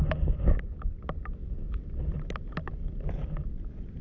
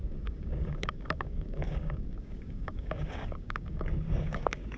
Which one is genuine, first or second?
first